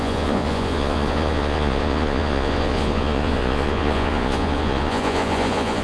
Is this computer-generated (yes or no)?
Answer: yes